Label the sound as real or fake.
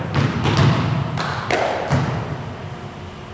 real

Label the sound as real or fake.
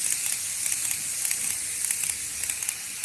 real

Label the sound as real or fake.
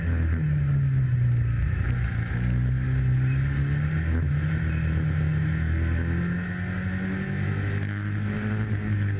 real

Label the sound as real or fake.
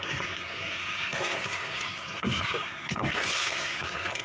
fake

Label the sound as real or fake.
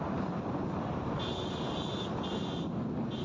real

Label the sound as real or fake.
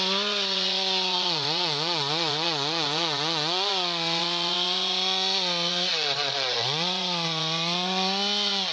fake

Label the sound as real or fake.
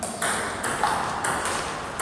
real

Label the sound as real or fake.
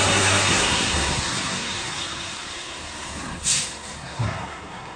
fake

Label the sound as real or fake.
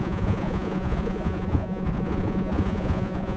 fake